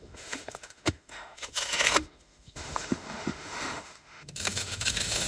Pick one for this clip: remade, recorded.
remade